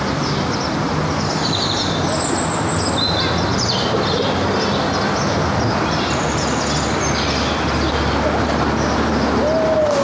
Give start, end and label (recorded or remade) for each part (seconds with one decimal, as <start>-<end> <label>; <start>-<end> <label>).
0.0-10.0 recorded